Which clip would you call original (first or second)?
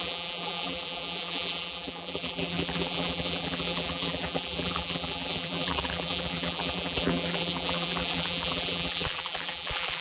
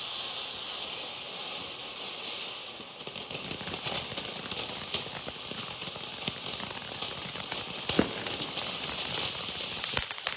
second